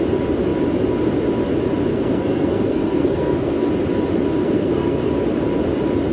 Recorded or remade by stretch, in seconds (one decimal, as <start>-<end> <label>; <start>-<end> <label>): 0.0-1.9 recorded; 1.9-3.6 remade; 3.6-4.4 recorded; 4.4-5.1 remade; 5.1-6.1 recorded